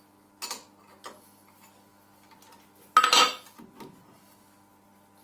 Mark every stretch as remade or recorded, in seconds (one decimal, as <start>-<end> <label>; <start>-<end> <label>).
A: 0.0-5.2 recorded